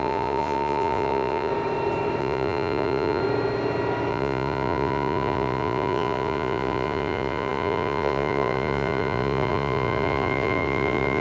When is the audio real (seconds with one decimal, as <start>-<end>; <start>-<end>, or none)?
1.5-2.2; 3.2-4.1